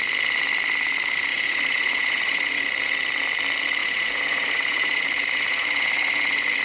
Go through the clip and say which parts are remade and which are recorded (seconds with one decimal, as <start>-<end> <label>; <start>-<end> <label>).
0.0-1.3 recorded; 1.3-2.6 remade; 2.6-3.8 recorded; 3.8-6.6 remade